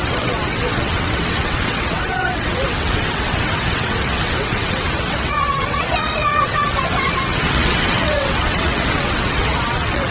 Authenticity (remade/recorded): remade